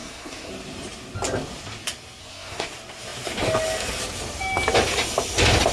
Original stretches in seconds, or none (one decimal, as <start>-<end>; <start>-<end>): 0.5-2.2; 2.7-5.7